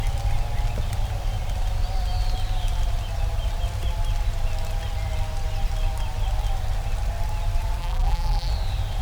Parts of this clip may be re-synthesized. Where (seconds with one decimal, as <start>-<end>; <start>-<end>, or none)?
7.8-8.5